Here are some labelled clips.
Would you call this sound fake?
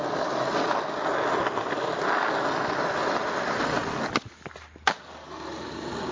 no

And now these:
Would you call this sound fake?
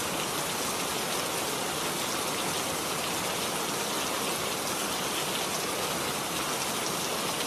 no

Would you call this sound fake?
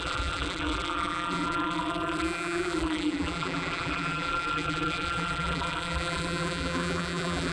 yes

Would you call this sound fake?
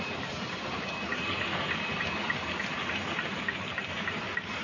no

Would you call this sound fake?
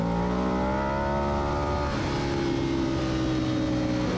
no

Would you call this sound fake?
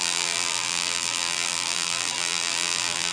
yes